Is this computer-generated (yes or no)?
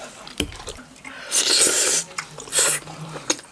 no